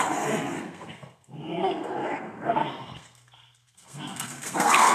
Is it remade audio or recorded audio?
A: remade